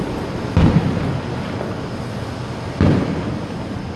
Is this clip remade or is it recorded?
recorded